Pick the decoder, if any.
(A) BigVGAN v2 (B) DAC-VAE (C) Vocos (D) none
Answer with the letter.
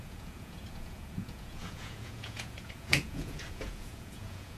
C